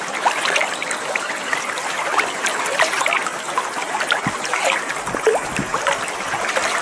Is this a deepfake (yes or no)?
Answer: no